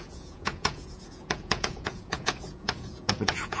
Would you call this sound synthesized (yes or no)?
yes